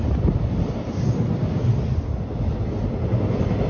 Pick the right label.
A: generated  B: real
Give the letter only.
B